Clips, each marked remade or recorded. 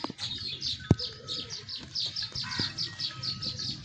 recorded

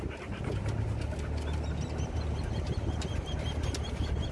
recorded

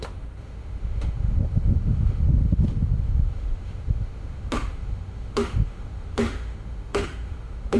remade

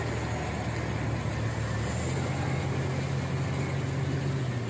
recorded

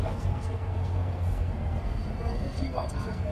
remade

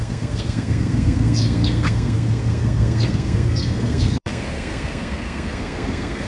remade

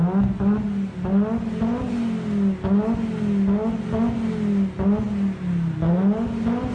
recorded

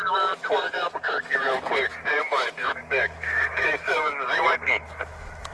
remade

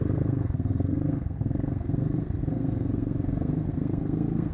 remade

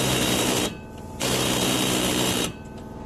remade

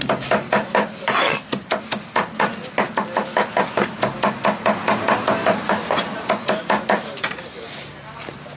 recorded